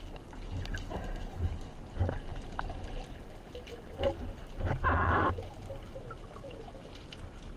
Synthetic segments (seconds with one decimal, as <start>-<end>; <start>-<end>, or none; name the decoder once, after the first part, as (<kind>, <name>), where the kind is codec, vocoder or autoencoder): none